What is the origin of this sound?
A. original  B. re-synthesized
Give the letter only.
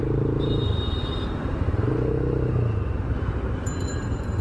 B